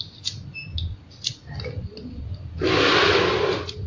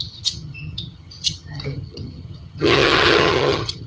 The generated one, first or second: second